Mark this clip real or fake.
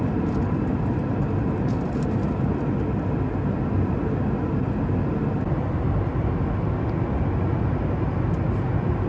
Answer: real